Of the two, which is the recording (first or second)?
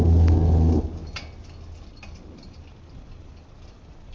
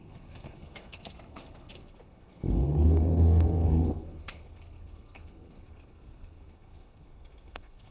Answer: first